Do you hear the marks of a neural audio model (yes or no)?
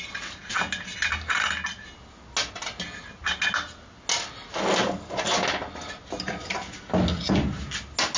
no